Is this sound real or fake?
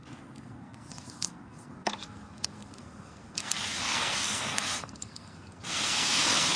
fake